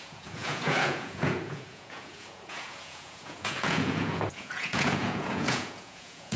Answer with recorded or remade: remade